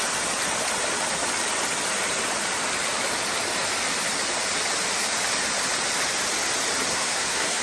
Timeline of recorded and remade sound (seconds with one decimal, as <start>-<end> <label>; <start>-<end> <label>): 0.0-6.9 recorded; 6.9-7.6 remade